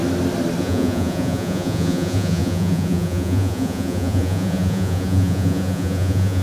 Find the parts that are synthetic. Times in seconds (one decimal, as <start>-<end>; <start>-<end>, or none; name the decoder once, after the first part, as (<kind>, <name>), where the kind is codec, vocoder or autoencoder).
0.6-6.4 (vocoder, Vocos)